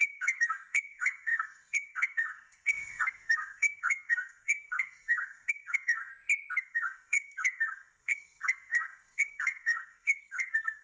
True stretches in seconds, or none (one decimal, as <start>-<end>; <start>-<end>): 6.1-6.6